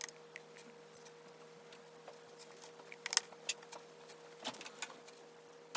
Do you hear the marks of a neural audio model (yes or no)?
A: no